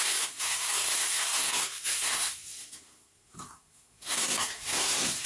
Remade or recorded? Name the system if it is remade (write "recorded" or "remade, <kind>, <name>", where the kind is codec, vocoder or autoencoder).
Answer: remade, codec, SNAC